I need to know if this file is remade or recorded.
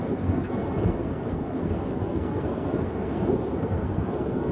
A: remade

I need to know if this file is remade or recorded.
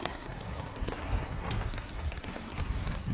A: remade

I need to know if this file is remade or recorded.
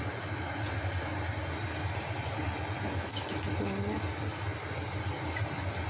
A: recorded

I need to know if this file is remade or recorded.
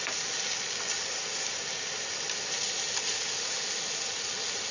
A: recorded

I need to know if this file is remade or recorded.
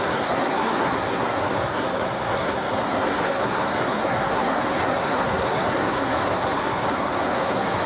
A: remade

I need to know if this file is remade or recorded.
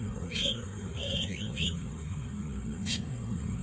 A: remade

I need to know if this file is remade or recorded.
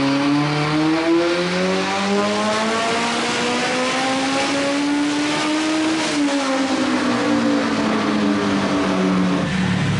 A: recorded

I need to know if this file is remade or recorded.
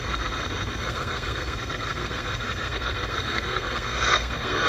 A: remade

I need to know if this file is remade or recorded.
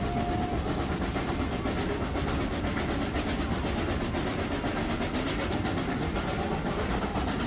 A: recorded